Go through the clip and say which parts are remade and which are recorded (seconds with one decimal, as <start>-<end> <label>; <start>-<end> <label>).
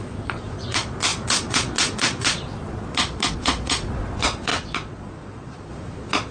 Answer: 0.0-6.3 remade